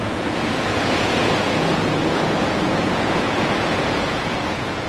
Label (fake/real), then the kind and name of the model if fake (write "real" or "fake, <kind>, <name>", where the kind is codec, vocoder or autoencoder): fake, vocoder, Vocos